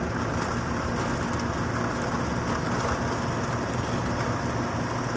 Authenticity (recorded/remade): recorded